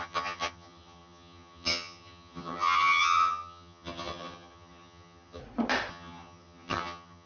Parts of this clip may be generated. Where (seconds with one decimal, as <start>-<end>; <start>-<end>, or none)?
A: 0.0-5.4; 5.9-7.3

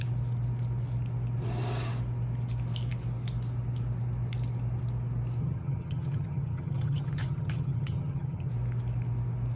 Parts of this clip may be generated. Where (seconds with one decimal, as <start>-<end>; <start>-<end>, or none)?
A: 5.4-8.5

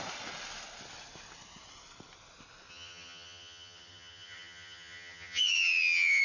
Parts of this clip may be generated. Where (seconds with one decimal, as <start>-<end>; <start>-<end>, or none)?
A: 2.7-6.2